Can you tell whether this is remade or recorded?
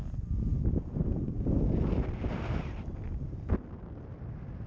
recorded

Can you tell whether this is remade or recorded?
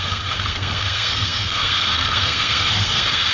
remade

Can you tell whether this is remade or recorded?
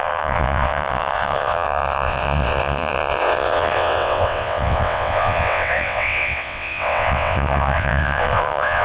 remade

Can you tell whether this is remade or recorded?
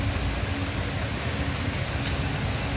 recorded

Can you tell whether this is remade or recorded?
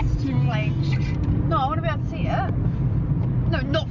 recorded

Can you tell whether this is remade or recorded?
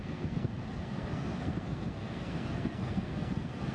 remade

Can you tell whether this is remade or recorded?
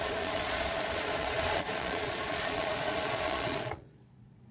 remade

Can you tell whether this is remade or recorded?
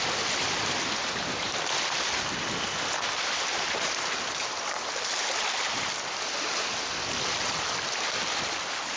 recorded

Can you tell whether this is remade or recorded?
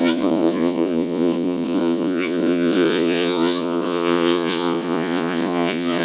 remade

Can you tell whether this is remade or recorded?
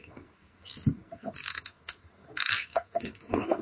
remade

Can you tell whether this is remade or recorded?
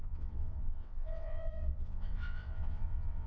remade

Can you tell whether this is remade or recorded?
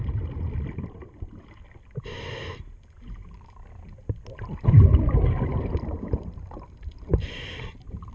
recorded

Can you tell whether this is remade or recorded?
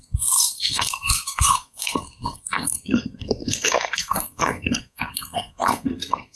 remade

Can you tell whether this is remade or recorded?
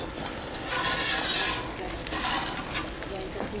recorded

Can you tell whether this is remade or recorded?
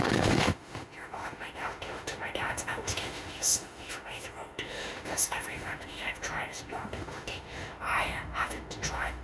remade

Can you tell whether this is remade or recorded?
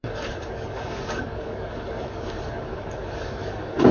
remade